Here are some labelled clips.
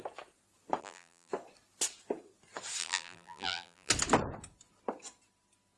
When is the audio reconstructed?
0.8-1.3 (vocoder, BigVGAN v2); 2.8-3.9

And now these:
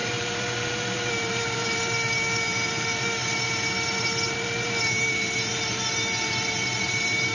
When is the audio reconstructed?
0.0-7.3 (vocoder, BigVGAN v2)